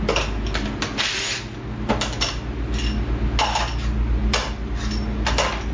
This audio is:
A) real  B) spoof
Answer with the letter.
A